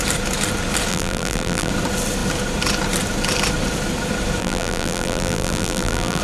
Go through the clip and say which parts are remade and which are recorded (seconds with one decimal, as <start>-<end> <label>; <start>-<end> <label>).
0.0-0.9 recorded; 0.9-1.7 remade; 1.7-4.4 recorded; 4.4-6.2 remade